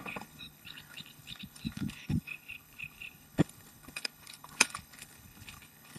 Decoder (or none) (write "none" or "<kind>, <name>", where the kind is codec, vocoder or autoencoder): codec, HILCodec